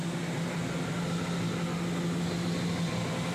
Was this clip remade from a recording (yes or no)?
no